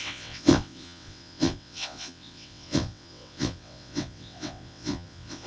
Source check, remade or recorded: remade